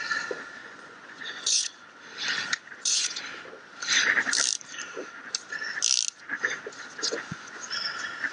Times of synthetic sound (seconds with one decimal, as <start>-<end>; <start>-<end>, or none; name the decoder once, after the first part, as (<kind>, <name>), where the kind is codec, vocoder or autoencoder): 0.6-1.9 (vocoder, Vocos); 2.5-3.2; 6.9-7.7